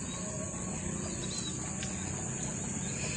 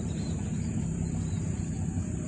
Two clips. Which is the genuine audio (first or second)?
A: first